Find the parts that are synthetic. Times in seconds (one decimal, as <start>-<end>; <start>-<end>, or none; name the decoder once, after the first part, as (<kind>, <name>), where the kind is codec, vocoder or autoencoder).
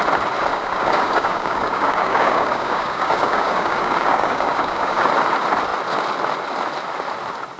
0.5-5.1 (codec, DAC)